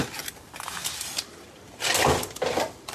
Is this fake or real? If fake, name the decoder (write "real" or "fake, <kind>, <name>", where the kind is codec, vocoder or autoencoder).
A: fake, vocoder, BigVGAN v2